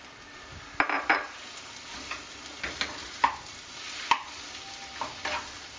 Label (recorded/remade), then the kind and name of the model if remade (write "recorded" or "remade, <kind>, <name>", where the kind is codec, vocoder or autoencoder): recorded